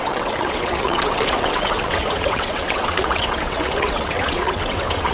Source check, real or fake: fake